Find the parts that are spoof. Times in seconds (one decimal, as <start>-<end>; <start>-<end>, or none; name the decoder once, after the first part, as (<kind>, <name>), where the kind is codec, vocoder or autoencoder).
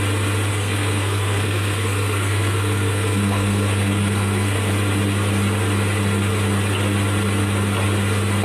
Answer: 0.5-4.7 (codec, SNAC)